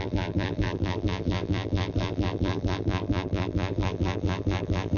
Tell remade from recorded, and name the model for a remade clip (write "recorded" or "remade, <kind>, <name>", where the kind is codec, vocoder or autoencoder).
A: remade, vocoder, BigVGAN v2